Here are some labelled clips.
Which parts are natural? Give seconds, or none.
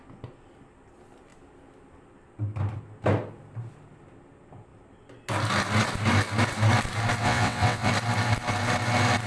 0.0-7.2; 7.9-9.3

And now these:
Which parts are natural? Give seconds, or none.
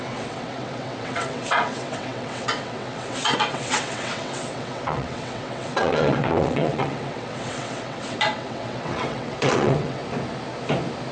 10.0-11.1